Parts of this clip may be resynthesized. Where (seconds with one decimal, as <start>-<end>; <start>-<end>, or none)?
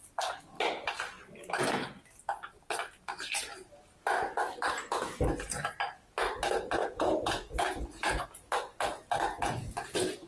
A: 6.8-8.2